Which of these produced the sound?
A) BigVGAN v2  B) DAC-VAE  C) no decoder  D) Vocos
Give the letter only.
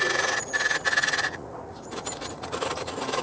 D